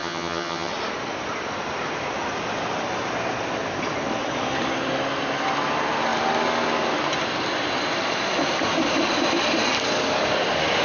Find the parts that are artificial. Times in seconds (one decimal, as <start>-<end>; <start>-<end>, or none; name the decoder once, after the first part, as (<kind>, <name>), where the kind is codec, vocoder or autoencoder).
0.0-0.7 (vocoder, HiFi-GAN)